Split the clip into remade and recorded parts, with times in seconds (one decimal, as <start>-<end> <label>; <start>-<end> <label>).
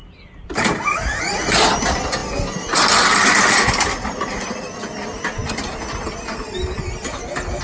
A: 0.0-7.6 recorded